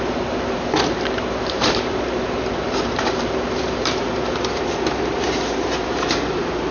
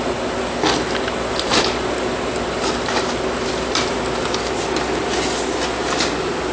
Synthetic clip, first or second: first